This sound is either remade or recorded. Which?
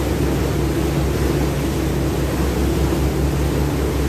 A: recorded